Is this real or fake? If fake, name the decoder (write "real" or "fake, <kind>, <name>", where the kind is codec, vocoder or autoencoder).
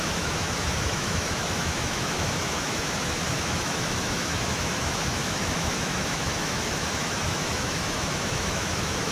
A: fake, autoencoder, DAC-VAE